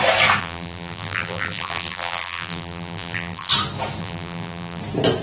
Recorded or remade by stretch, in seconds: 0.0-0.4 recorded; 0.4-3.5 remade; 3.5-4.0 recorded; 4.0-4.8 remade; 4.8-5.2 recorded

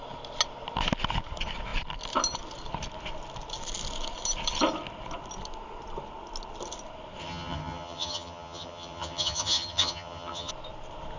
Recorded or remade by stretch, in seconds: 0.0-7.2 recorded; 7.2-10.5 remade; 10.5-11.2 recorded